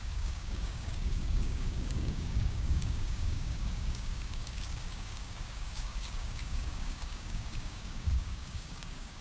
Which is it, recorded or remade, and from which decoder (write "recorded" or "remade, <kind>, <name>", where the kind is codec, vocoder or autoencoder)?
remade, codec, DAC